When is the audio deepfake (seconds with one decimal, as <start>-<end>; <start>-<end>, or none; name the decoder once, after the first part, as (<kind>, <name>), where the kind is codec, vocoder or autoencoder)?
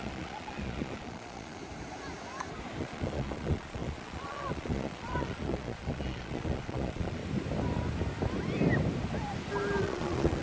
0.0-1.6 (vocoder, Vocos); 2.8-7.2; 9.8-10.4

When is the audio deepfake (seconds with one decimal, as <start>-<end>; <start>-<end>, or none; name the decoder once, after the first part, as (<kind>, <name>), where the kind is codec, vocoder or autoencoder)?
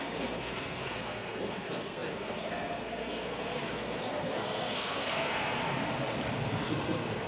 0.0-5.6 (codec, SNAC); 6.5-7.3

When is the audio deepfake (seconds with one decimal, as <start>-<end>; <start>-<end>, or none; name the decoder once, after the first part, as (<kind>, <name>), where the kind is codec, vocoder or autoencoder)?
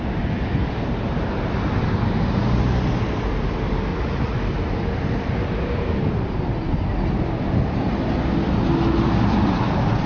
3.9-4.4 (vocoder, Vocos)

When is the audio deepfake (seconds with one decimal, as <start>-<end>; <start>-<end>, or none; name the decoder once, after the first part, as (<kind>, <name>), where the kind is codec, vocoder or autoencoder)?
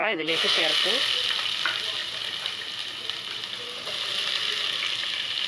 0.0-0.6 (codec, SNAC)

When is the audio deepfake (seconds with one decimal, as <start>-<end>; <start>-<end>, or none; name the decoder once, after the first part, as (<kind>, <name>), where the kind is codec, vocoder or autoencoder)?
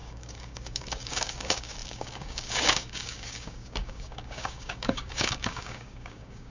0.0-6.5 (codec, DAC)